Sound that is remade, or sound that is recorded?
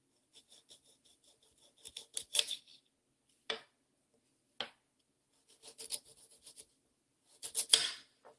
recorded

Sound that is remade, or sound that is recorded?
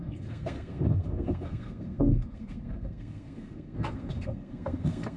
remade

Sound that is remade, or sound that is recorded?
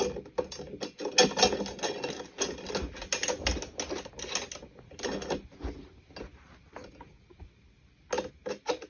recorded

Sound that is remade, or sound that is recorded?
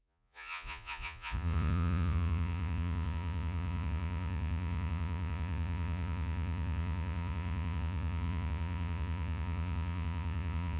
remade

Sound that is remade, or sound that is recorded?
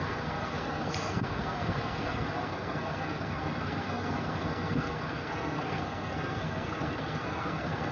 remade